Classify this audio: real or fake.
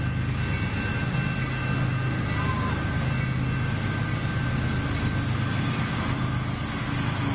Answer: real